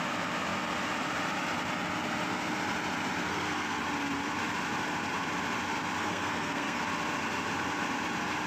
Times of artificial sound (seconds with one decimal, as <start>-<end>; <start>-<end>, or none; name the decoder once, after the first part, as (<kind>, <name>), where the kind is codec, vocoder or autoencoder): 3.2-3.8 (codec, SNAC); 6.0-6.8